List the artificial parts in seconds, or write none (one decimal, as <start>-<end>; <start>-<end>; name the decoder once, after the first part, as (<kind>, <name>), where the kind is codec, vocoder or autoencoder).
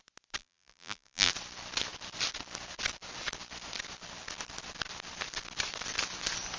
0.4-1.3 (vocoder, BigVGAN v2)